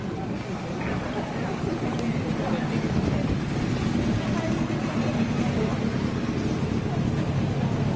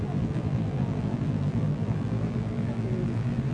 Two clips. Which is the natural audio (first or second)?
first